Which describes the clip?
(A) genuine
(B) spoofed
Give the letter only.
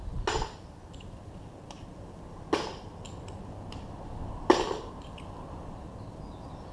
A